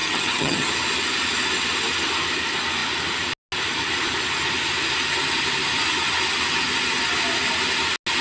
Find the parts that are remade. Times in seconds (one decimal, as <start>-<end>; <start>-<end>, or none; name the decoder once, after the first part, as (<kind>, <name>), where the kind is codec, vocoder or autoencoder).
0.0-0.7 (vocoder, HiFi-GAN)